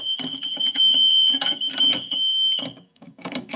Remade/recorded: remade